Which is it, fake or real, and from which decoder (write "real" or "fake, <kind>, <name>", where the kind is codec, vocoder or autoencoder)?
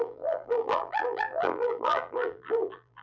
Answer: fake, vocoder, BigVGAN v2